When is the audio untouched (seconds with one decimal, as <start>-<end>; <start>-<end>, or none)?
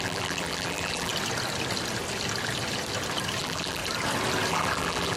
1.1-3.4; 3.8-4.5